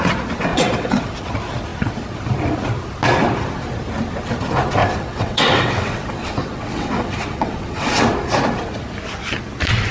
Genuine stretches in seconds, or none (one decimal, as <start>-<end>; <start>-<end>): 0.0-0.5; 1.0-4.8; 8.0-9.9